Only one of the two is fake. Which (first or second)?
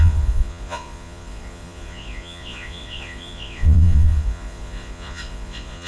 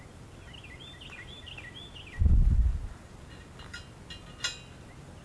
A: first